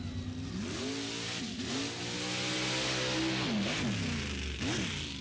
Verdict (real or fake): real